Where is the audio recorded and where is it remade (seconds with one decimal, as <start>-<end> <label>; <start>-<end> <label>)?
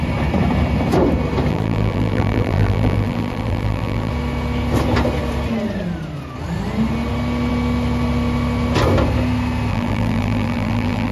0.0-1.5 recorded; 1.5-4.1 remade; 4.1-9.7 recorded; 9.7-11.1 remade